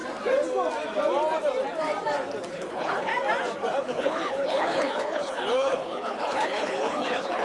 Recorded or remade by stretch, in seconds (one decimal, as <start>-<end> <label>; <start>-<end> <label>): 0.0-2.5 recorded; 2.5-3.1 remade; 3.1-3.8 recorded; 3.8-7.4 remade